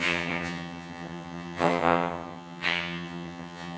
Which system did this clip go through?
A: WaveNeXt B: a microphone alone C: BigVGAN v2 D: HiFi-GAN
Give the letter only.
D